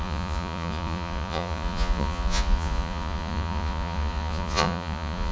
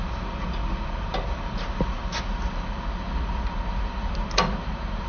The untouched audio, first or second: second